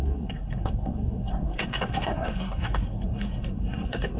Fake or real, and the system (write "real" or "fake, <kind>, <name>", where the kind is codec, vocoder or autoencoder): fake, codec, SNAC